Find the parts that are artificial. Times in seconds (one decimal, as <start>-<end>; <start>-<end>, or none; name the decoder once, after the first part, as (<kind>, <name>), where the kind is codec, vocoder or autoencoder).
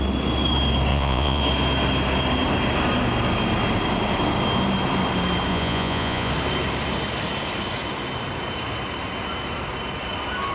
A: 0.9-1.4 (vocoder, Vocos); 5.5-6.3